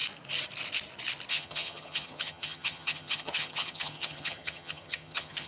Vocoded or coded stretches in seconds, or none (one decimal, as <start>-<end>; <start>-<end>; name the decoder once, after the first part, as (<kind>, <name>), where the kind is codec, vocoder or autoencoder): 1.3-5.5 (vocoder, HiFi-GAN)